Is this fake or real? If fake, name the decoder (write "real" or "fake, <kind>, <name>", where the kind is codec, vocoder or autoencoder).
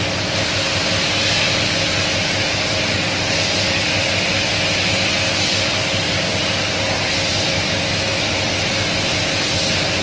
real